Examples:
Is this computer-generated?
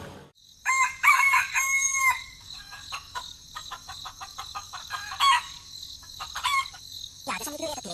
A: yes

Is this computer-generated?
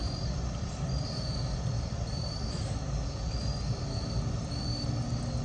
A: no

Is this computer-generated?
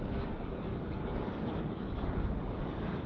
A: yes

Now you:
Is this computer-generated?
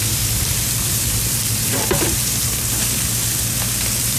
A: yes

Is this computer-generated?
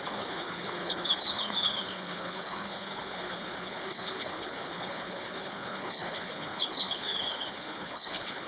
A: yes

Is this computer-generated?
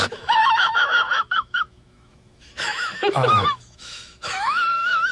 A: yes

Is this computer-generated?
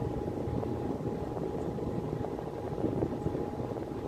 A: no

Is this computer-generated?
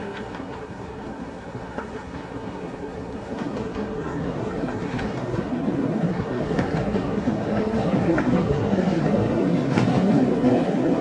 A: yes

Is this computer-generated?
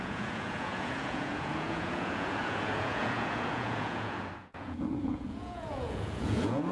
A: yes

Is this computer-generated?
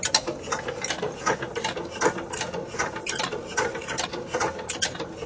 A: no